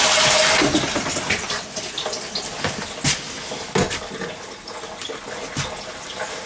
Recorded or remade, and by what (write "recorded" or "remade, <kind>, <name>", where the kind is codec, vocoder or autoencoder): recorded